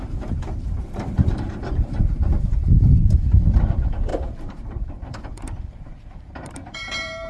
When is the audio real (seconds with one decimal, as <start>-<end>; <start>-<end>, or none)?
none